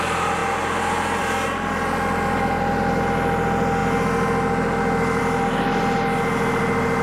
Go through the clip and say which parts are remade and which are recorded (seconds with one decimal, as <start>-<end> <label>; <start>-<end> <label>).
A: 0.0-7.0 recorded